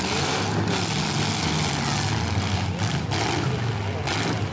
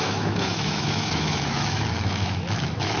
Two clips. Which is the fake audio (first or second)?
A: second